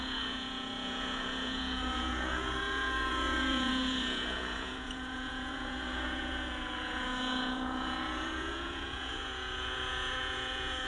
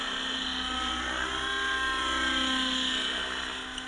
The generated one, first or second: first